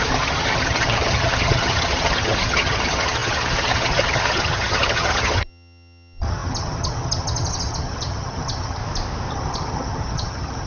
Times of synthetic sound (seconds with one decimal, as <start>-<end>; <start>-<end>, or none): 0.0-8.8; 9.3-10.7